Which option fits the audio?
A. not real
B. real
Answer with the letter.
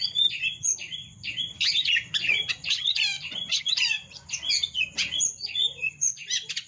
A